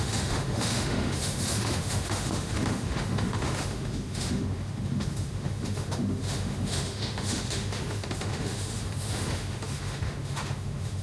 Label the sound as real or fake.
fake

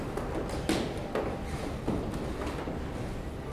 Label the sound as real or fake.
real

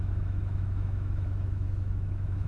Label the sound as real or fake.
fake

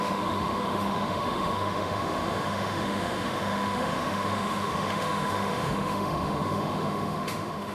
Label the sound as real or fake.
fake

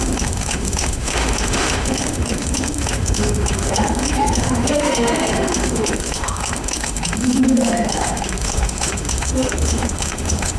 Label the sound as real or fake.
fake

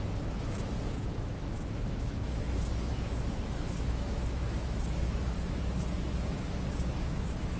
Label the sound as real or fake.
fake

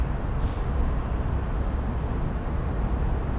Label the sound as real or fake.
real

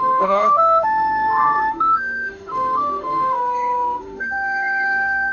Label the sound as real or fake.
fake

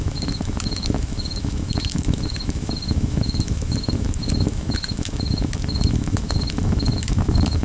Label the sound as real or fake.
fake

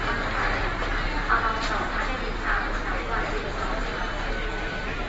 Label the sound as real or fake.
real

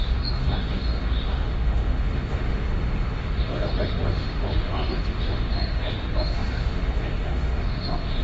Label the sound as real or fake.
fake